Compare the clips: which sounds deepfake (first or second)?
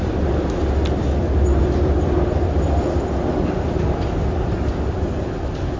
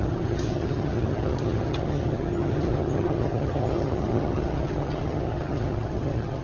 second